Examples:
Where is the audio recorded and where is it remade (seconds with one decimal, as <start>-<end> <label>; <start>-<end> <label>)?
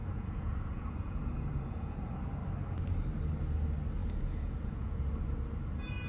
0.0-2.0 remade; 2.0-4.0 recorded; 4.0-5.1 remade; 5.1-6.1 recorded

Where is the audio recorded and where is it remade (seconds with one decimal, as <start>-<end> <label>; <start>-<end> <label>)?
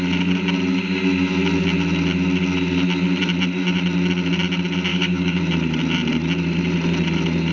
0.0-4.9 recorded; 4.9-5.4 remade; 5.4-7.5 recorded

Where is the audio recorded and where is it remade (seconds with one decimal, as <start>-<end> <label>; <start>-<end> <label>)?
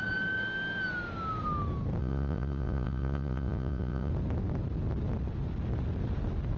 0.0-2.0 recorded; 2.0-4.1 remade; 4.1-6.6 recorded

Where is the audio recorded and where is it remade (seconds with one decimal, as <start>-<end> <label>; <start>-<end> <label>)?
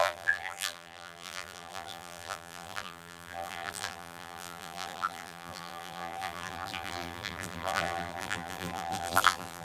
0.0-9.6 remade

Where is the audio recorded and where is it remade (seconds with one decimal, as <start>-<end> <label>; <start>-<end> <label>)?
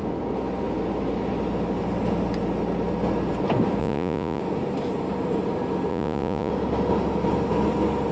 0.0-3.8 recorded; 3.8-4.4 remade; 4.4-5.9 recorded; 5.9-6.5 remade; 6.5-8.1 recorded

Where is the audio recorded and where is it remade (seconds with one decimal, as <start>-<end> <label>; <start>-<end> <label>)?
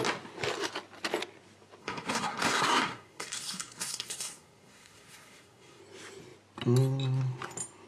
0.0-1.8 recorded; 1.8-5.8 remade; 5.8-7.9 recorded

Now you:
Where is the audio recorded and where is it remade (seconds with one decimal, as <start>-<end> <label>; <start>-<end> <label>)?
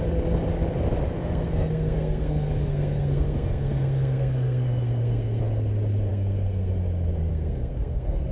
0.0-1.2 recorded; 1.2-5.4 remade; 5.4-6.1 recorded; 6.1-6.7 remade; 6.7-7.3 recorded; 7.3-8.3 remade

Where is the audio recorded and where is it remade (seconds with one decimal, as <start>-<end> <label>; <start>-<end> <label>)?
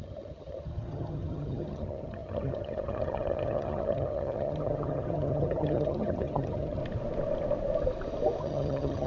0.0-6.8 remade; 6.8-8.4 recorded; 8.4-9.1 remade